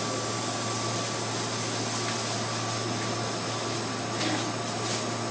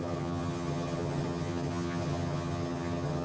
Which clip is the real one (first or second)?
first